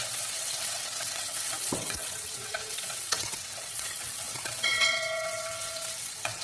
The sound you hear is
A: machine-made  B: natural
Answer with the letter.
A